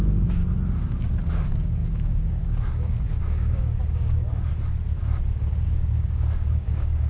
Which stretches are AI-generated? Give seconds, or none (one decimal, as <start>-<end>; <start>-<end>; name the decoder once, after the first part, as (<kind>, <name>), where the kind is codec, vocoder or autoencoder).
0.0-0.4 (codec, DAC); 1.3-4.5; 5.6-7.1